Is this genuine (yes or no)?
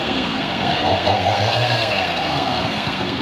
no